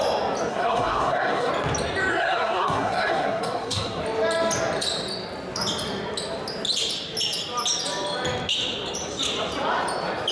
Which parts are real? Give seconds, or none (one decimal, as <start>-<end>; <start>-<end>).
0.0-0.5; 1.5-2.1; 4.0-10.3